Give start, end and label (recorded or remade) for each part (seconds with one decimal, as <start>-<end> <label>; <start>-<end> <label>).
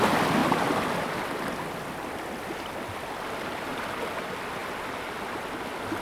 0.0-6.0 recorded